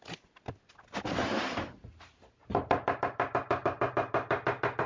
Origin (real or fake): real